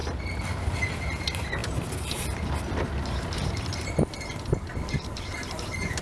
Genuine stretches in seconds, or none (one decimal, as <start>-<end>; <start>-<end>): 0.0-1.6; 5.2-6.0

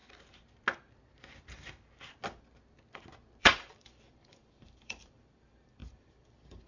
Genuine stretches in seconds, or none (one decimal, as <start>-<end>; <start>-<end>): 0.0-3.4

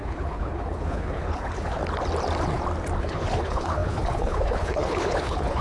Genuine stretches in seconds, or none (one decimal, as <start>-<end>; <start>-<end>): 1.8-3.0